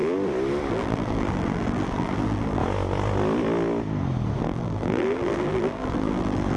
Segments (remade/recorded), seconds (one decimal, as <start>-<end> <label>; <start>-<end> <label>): 0.0-0.7 recorded; 0.7-2.6 remade; 2.6-4.4 recorded; 4.4-6.6 remade